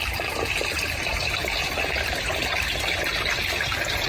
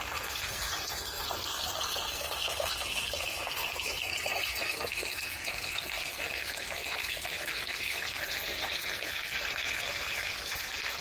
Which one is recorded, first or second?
first